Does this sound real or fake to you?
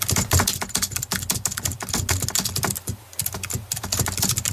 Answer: real